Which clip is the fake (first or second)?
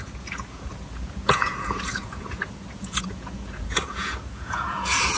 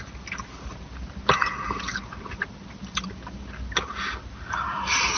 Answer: first